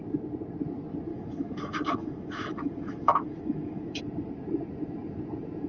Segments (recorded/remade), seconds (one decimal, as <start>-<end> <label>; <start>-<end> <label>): 0.0-1.1 recorded; 1.1-4.0 remade; 4.0-5.7 recorded